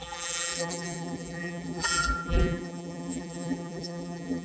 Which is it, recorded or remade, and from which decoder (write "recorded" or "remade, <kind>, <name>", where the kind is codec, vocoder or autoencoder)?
remade, vocoder, BigVGAN v2